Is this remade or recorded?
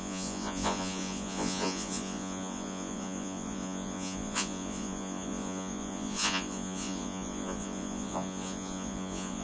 remade